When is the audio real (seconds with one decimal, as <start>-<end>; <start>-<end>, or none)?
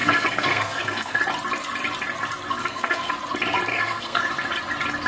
1.2-2.6; 3.1-3.7; 4.2-5.1